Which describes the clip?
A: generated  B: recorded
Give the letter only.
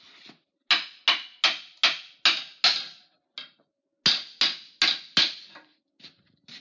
B